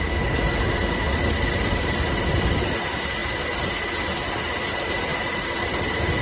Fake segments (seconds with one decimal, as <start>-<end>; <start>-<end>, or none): 1.1-2.6; 5.1-5.8

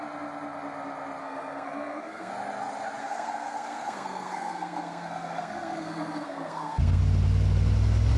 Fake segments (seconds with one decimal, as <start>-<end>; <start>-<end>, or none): 1.2-2.3; 3.0-7.0

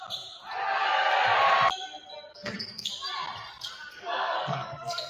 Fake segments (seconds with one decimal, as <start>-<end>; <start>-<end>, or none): 2.3-2.9; 3.9-5.1

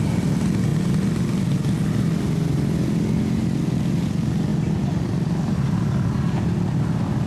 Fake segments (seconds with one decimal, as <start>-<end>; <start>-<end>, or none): 4.5-5.5

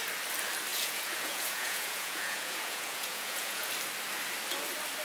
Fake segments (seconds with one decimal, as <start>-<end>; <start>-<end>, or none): 0.7-3.7

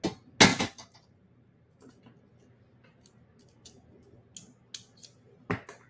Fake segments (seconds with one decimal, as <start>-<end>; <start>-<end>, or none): 0.5-1.9

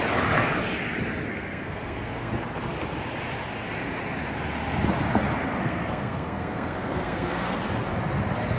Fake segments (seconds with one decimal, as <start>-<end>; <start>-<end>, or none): 1.3-2.3; 5.6-7.6